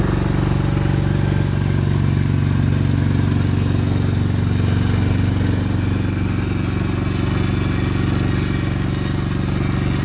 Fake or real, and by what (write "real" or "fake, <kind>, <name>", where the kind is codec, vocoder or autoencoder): real